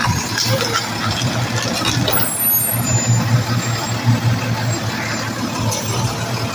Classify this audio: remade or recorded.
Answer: recorded